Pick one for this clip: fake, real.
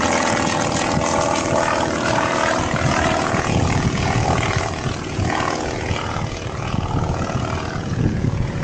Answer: fake